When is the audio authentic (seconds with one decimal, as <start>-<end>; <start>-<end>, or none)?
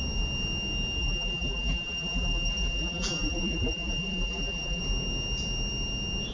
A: 0.0-1.0; 4.8-6.3